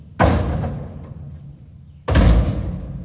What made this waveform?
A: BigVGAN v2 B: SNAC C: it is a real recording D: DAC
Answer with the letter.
C